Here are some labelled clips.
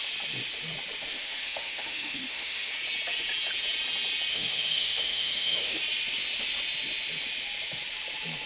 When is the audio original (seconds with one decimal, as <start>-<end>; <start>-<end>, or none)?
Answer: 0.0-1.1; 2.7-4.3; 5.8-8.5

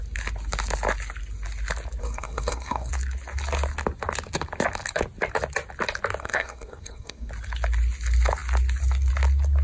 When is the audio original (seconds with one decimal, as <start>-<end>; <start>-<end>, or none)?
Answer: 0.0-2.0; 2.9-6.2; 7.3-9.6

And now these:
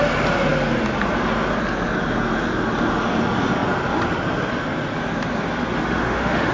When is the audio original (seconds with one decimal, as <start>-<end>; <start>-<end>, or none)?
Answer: 0.0-5.7

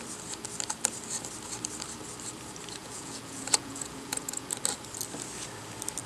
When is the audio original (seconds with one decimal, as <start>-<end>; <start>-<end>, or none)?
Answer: 0.0-2.8; 4.5-6.1

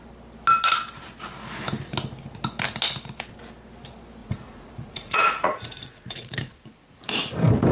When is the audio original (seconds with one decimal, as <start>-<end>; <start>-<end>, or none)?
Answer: 0.0-4.2; 7.3-7.7